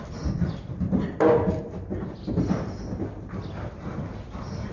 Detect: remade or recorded recorded